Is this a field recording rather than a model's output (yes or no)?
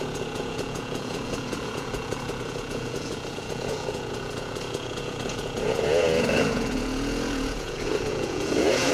no